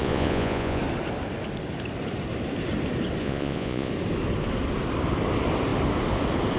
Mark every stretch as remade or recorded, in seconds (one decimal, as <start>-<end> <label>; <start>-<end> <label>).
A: 0.0-0.8 remade; 0.8-3.2 recorded; 3.2-3.9 remade; 3.9-6.6 recorded